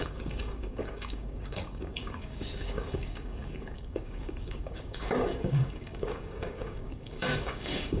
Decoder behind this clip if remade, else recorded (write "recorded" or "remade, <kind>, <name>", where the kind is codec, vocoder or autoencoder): remade, codec, DAC